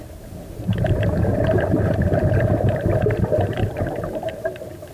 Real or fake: fake